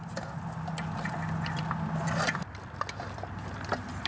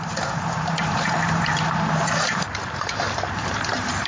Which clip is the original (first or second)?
first